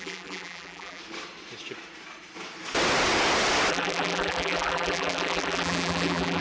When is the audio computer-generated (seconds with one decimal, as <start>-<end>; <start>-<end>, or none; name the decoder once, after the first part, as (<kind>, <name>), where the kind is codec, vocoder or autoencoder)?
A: 0.0-1.0 (vocoder, BigVGAN v2); 3.7-6.4